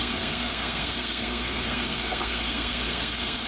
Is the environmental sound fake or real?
fake